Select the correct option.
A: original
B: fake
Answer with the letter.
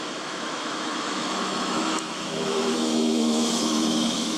B